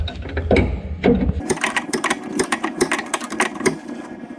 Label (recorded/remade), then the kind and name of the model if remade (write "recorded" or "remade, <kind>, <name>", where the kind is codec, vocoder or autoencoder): recorded